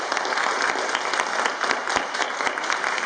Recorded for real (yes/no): yes